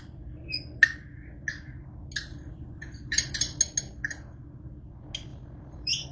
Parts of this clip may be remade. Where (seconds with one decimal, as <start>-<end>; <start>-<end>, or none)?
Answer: 2.3-3.6; 5.3-6.1